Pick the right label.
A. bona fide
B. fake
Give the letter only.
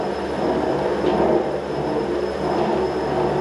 A